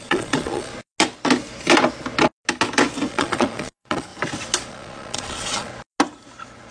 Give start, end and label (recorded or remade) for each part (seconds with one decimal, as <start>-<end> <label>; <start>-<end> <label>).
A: 0.0-0.7 remade; 0.7-3.1 recorded; 3.1-4.1 remade; 4.1-4.7 recorded; 4.7-5.7 remade; 5.7-6.7 recorded